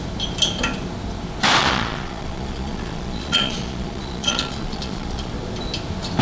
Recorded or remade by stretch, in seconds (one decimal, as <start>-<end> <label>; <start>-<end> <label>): 0.0-1.6 recorded; 1.6-5.3 remade; 5.3-6.2 recorded